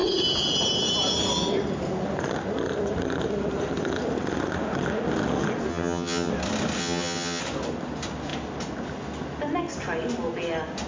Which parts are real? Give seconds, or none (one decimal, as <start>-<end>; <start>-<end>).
0.0-5.7; 6.3-6.8; 7.4-10.9